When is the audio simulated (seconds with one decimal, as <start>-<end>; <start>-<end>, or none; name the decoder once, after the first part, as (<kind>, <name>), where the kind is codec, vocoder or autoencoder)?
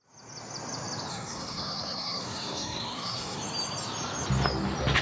1.1-3.4 (codec, SNAC)